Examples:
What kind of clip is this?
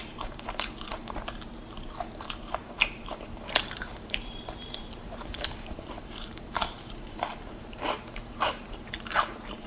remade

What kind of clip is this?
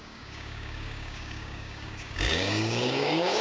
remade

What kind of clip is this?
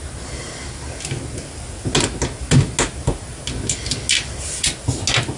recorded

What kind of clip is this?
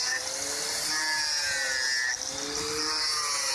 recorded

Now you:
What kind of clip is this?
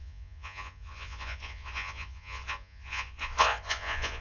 remade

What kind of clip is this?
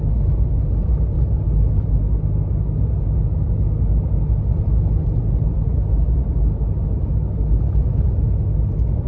recorded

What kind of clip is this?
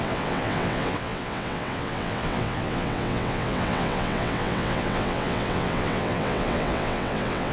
remade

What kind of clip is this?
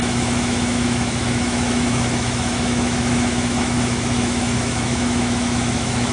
remade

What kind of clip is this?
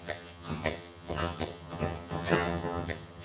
remade